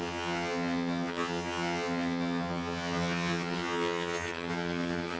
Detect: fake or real fake